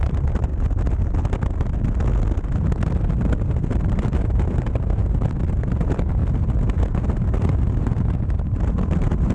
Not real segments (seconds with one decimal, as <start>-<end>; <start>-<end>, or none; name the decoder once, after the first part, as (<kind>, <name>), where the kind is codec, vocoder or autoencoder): 0.0-0.5 (vocoder, BigVGAN v2); 3.7-5.0; 5.5-6.2; 6.8-9.3